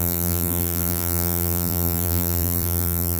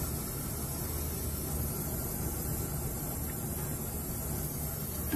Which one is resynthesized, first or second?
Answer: first